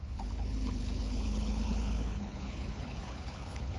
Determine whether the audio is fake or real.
fake